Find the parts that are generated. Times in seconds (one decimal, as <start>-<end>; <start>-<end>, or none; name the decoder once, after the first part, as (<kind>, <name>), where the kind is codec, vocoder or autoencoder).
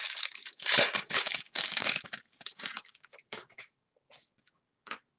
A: 0.0-5.2 (codec, DAC)